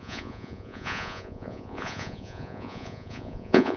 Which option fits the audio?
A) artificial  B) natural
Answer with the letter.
A